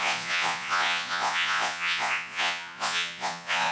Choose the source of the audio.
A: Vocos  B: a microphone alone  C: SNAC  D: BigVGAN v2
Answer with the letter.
A